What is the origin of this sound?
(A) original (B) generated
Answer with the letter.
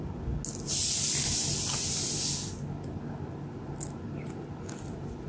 A